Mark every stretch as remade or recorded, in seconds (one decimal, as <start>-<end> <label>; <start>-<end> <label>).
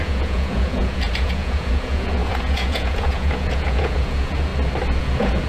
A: 0.0-4.5 remade; 4.5-5.0 recorded; 5.0-5.5 remade